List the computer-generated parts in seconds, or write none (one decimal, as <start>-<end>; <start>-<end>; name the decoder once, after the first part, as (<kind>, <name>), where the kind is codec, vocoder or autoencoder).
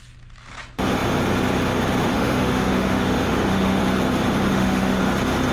2.1-3.8 (autoencoder, DAC-VAE); 4.5-5.0